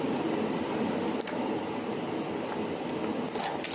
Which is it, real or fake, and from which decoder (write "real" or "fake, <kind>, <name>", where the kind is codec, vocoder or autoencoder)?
real